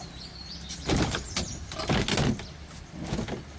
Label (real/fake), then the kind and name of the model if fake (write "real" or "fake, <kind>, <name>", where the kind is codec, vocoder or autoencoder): real